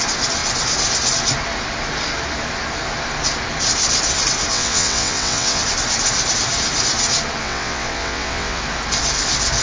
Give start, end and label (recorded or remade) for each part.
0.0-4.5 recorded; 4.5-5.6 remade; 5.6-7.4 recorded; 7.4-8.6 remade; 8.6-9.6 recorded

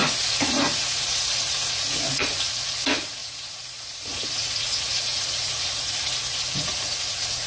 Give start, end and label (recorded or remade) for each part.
0.0-7.5 remade

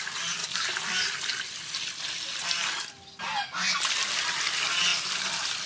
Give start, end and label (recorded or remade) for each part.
0.0-5.7 recorded

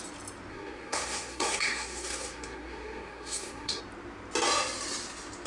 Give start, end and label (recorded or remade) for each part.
0.0-0.5 recorded; 0.5-3.8 remade; 3.8-5.5 recorded

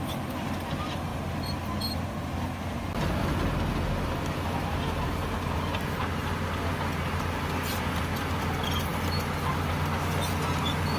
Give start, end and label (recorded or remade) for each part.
0.0-11.0 recorded

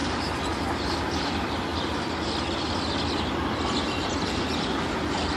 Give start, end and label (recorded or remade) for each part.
0.0-5.4 recorded